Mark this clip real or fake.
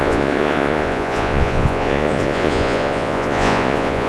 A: fake